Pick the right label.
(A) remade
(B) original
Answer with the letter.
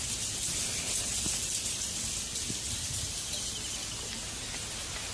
B